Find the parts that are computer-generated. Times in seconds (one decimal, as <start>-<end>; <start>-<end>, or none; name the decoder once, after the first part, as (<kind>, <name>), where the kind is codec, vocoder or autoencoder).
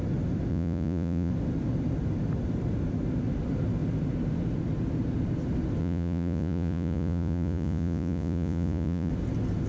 0.5-1.3 (vocoder, Vocos); 5.8-9.1